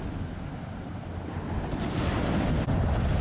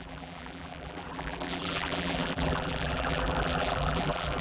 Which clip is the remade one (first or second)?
second